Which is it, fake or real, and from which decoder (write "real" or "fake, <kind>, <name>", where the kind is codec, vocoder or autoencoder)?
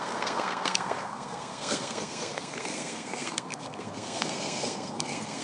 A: fake, codec, SNAC